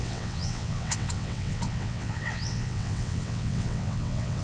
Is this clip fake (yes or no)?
yes